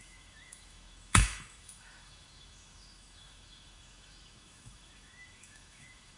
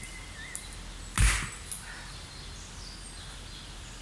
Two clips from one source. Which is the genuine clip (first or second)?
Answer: second